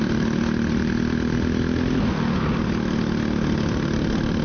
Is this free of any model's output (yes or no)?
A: yes